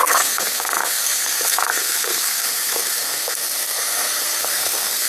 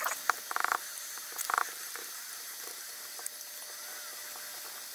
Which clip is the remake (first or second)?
first